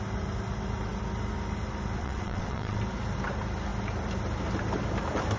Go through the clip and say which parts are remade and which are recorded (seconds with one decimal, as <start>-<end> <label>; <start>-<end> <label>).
0.0-2.0 recorded; 2.0-2.8 remade; 2.8-5.4 recorded